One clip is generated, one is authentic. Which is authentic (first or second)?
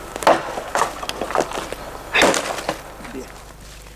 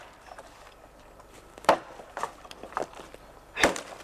first